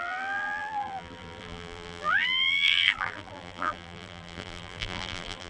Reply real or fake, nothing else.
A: fake